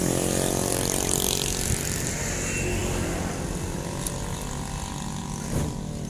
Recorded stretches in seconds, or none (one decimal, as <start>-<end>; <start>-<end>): 0.0-0.6; 2.2-6.1